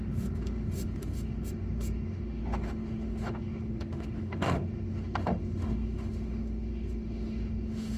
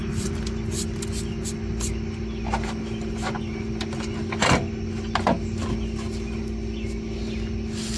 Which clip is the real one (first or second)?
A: second